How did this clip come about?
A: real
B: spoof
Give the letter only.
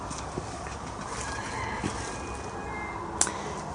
A